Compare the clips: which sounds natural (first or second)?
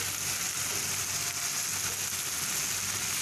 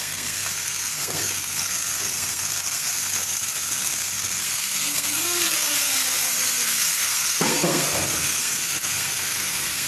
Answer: first